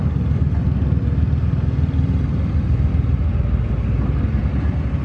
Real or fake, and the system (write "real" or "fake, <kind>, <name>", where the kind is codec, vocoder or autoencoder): real